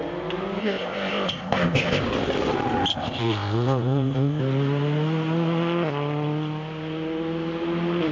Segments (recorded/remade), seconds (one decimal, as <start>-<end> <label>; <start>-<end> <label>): 0.0-0.6 recorded; 0.6-2.0 remade; 2.0-2.9 recorded; 2.9-4.4 remade; 4.4-8.1 recorded